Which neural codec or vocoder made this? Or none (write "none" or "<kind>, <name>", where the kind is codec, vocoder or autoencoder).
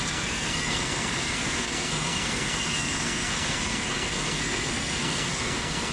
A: codec, SNAC